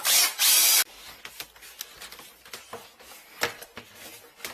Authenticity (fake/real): real